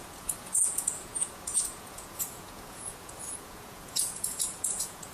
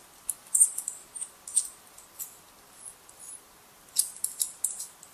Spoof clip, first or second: first